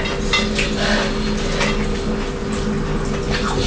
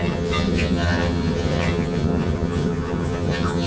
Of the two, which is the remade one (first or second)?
second